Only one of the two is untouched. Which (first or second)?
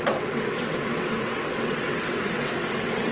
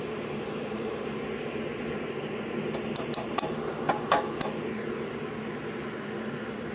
second